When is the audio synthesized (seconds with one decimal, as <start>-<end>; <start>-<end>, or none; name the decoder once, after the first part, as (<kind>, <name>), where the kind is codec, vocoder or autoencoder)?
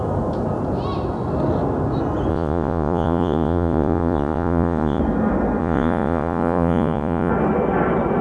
2.3-5.0 (vocoder, Vocos); 5.6-7.3